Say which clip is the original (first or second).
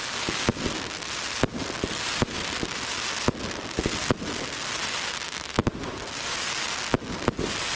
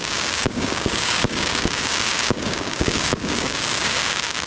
first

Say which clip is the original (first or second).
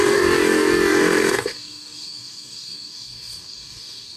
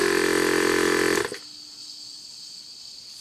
second